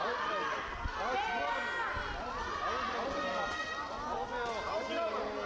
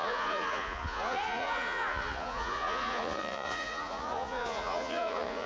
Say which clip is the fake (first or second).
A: second